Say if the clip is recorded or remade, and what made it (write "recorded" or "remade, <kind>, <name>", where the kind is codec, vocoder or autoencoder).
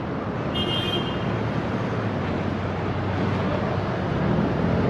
recorded